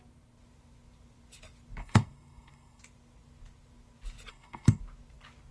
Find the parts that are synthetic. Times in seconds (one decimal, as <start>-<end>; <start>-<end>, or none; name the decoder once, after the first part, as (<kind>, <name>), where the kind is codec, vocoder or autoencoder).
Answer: 1.8-2.8 (codec, SNAC); 4.3-4.8